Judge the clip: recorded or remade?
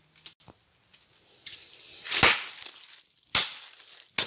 recorded